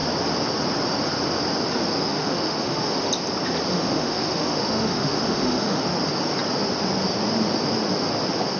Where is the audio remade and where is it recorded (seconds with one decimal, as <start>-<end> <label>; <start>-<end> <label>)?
0.0-2.0 recorded; 2.0-3.1 remade; 3.1-3.7 recorded; 3.7-5.8 remade; 5.8-8.6 recorded